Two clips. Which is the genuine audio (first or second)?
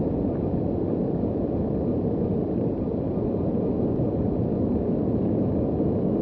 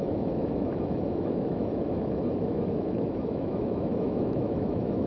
first